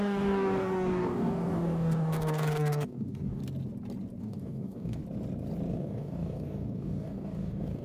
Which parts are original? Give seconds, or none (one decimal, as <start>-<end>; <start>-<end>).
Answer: 3.4-4.2; 5.0-5.7